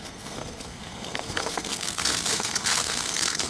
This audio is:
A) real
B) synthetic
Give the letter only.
B